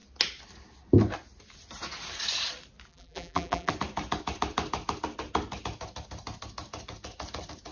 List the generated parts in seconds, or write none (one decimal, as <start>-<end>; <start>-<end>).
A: 2.9-3.7